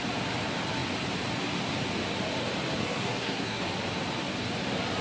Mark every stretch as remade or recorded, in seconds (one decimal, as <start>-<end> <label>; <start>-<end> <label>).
0.0-2.8 recorded; 2.8-3.6 remade; 3.6-5.0 recorded